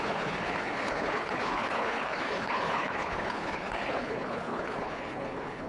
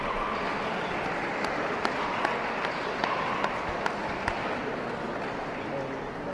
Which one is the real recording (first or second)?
second